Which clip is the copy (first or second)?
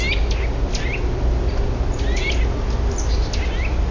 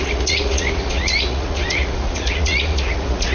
second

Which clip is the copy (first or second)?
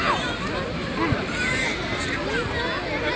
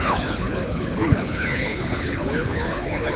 second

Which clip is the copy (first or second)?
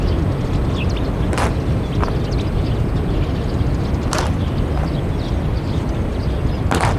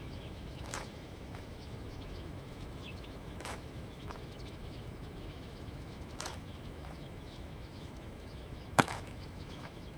second